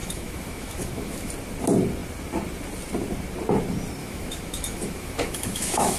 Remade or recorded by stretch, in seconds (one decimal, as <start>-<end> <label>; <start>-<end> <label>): 0.0-1.3 remade; 1.3-4.0 recorded; 4.0-6.0 remade